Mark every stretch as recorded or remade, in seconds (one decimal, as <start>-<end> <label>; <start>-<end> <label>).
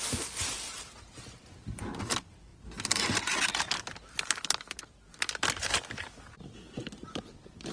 0.0-7.7 recorded